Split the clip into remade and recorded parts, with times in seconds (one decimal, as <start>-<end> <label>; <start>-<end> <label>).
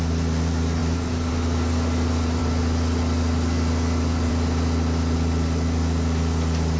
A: 0.0-6.8 recorded